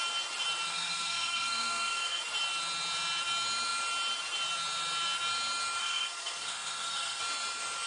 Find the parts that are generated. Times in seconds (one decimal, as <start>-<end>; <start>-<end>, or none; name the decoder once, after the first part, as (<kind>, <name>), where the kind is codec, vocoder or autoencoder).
0.7-2.2 (codec, SNAC); 5.8-7.2